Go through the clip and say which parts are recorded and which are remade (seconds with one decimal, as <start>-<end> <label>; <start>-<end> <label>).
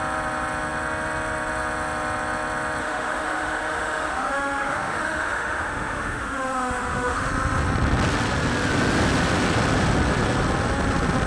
0.0-2.8 recorded; 2.8-7.3 remade; 7.3-11.3 recorded